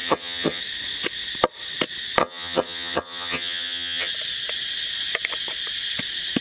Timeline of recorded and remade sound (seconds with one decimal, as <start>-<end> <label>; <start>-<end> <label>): 0.0-0.6 remade; 0.6-2.2 recorded; 2.2-4.1 remade; 4.1-6.4 recorded